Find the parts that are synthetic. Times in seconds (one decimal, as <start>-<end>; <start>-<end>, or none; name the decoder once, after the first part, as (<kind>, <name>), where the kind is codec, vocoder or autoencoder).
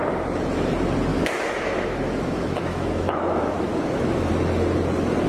1.1-4.3 (autoencoder, DAC-VAE)